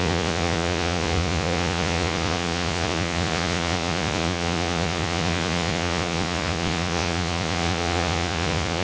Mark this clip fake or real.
fake